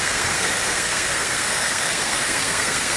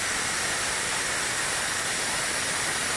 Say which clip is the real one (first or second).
second